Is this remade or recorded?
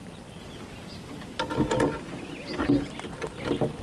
recorded